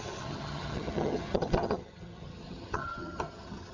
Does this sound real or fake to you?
fake